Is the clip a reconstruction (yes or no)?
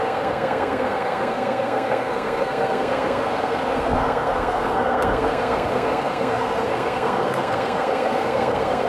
yes